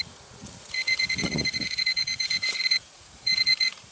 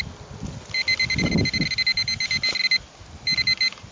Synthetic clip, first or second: first